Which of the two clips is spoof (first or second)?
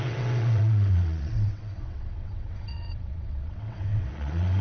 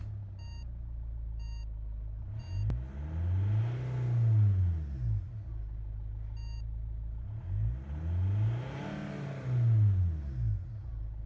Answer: first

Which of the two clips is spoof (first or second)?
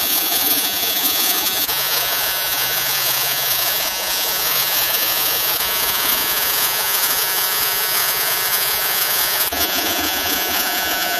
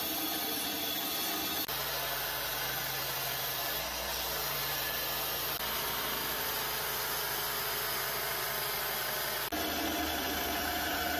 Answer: first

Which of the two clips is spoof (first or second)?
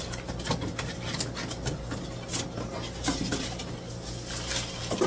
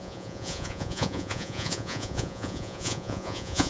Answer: second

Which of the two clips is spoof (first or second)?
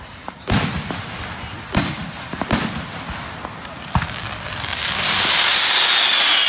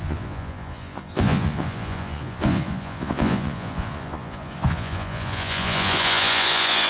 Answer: second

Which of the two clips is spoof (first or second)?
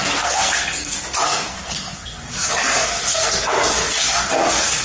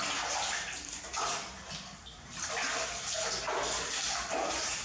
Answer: first